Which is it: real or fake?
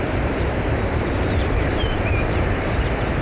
fake